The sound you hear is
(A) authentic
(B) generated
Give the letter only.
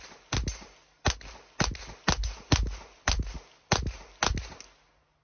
A